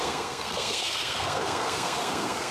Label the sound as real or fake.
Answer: fake